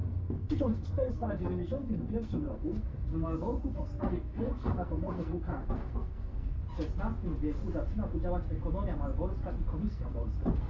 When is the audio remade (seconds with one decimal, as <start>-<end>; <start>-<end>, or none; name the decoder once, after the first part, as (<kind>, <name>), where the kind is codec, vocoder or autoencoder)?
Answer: 0.0-6.6 (codec, SNAC); 9.8-10.7